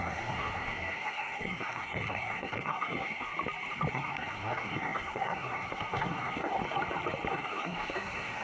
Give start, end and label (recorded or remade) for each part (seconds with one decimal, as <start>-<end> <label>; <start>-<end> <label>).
0.0-3.3 remade; 3.3-3.9 recorded; 3.9-6.6 remade; 6.6-7.3 recorded; 7.3-8.4 remade

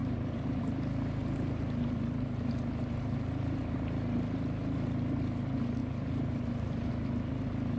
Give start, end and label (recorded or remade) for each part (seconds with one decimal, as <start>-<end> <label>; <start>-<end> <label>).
0.0-0.6 remade; 0.6-1.2 recorded; 1.2-3.6 remade; 3.6-5.8 recorded; 5.8-6.9 remade; 6.9-7.8 recorded

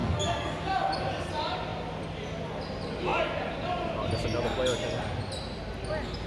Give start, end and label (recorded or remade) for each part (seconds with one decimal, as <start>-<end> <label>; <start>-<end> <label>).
0.0-0.9 remade; 0.9-6.3 recorded

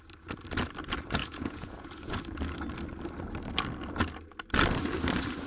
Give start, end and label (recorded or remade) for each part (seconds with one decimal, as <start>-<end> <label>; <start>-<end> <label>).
0.0-1.2 recorded; 1.2-2.2 remade; 2.2-5.5 recorded